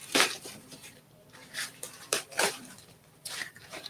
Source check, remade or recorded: remade